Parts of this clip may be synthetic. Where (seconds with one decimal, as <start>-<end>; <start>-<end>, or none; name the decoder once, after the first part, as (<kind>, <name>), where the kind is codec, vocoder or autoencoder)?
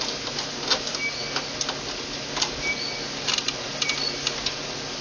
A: none